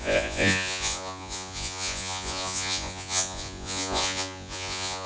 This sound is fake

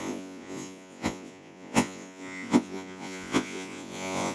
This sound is fake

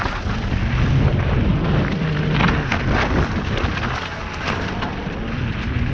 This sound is real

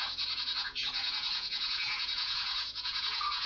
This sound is fake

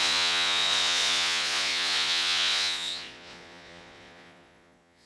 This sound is fake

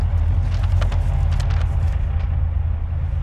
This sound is real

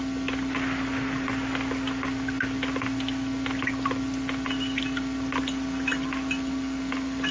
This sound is real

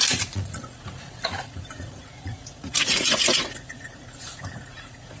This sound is fake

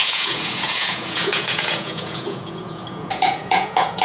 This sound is fake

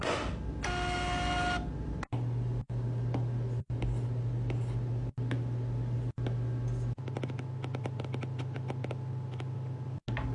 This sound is real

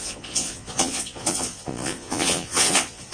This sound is fake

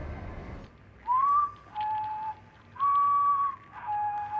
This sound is real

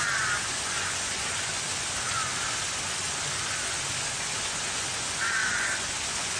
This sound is fake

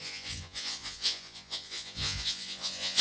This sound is fake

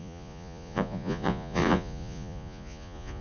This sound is fake